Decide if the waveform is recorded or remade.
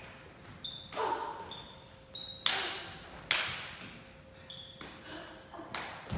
recorded